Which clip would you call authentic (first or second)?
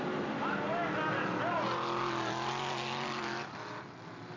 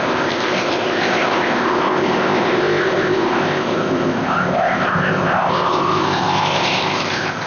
first